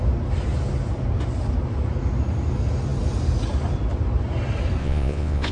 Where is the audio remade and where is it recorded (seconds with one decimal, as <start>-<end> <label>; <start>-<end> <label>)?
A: 0.0-4.8 recorded; 4.8-5.5 remade